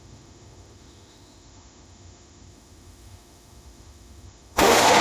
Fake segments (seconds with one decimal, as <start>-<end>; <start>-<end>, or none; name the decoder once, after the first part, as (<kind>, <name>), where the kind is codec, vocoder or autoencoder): 0.0-5.0 (autoencoder, DAC-VAE)